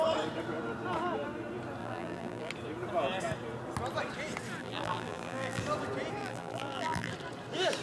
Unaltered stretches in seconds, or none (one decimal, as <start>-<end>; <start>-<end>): 0.0-1.8; 2.5-4.6; 5.6-6.2; 7.1-7.8